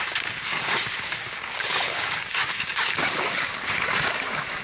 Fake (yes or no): yes